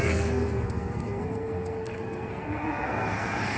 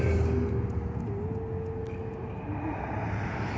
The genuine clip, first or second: second